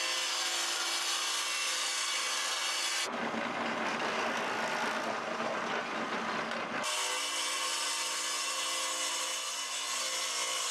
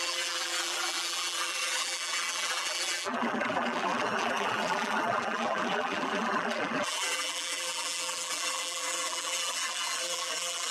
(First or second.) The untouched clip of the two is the first